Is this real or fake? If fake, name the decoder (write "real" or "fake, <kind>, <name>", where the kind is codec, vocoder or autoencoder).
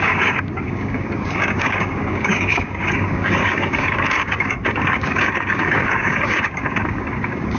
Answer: fake, codec, DAC